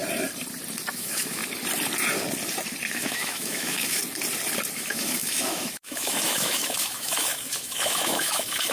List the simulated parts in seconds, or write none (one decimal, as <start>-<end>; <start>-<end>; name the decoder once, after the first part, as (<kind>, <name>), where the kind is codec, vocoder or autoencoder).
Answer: 0.9-1.4 (autoencoder, DAC-VAE); 2.9-4.0; 4.7-8.7